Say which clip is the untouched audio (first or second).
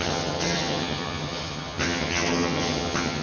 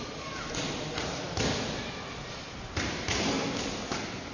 second